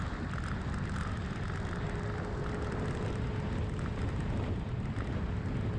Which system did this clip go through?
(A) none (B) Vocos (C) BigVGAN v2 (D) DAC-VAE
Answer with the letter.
A